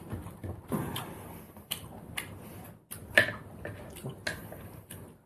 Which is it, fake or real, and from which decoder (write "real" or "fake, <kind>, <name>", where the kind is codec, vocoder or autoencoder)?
real